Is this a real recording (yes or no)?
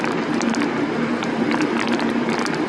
no